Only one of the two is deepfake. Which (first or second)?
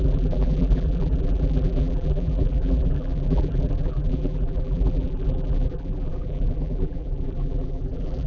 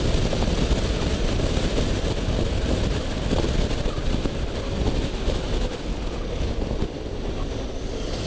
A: first